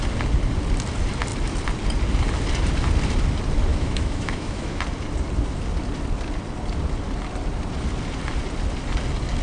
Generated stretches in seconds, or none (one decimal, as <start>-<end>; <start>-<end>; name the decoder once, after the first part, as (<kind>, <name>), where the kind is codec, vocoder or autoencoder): 3.7-4.8 (autoencoder, DAC-VAE)